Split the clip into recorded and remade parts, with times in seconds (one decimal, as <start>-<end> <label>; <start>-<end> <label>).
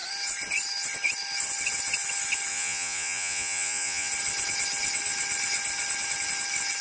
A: 0.0-2.5 recorded; 2.5-4.1 remade; 4.1-6.8 recorded